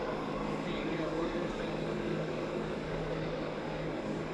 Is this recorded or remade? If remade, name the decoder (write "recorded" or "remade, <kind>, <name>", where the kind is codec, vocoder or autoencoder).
remade, codec, DAC